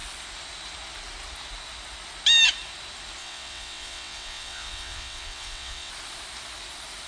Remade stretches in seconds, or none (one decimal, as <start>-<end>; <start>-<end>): 3.2-5.9